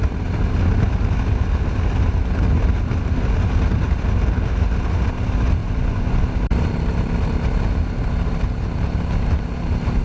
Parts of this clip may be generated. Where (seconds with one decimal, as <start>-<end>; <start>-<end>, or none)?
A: 5.6-6.2